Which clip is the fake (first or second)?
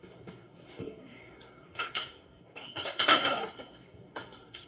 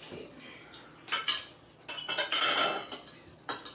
first